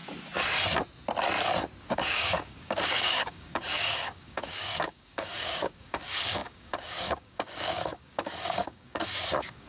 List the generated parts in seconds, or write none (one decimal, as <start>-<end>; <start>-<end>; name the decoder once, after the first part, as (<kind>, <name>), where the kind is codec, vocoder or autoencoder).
1.8-9.7 (codec, DAC)